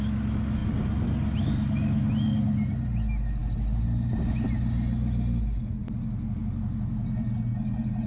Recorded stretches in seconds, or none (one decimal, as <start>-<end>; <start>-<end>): 0.0-8.1